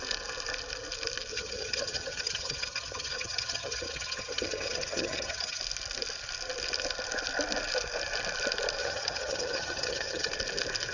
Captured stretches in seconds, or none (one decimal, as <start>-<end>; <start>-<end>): 0.0-1.3; 5.6-8.8; 10.3-10.9

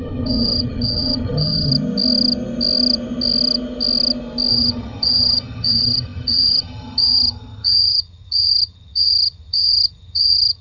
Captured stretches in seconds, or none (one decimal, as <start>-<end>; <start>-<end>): 1.7-4.5

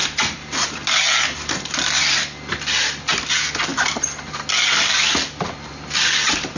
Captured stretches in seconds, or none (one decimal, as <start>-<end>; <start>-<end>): 0.0-6.6